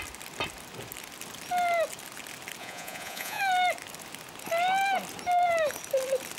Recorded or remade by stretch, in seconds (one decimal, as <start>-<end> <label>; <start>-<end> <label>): 0.0-2.6 recorded; 2.6-3.4 remade; 3.4-6.4 recorded